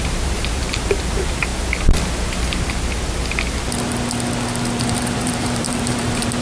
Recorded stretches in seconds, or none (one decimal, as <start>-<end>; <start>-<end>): 1.5-4.8